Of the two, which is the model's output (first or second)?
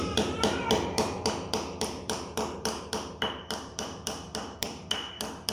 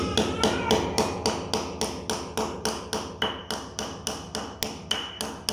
first